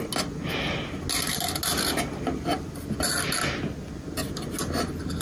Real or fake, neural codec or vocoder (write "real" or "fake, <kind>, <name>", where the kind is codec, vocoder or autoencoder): real